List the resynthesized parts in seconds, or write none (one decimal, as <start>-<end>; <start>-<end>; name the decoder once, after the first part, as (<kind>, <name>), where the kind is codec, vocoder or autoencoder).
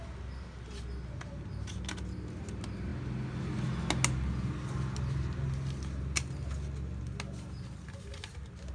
none